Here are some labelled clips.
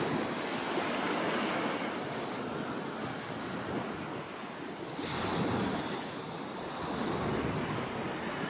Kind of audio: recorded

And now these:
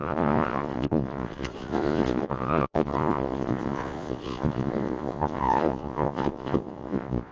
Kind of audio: remade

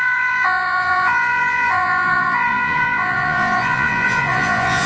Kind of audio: remade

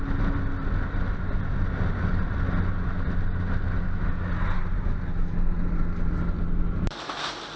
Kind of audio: recorded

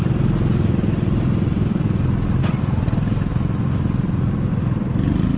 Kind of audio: recorded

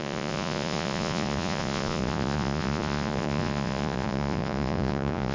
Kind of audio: remade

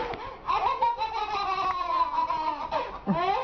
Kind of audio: recorded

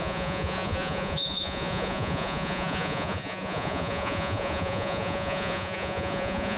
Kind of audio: remade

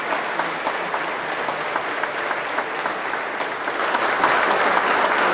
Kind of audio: recorded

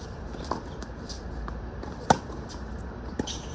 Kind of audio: recorded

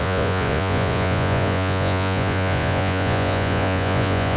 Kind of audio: remade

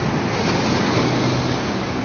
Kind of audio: recorded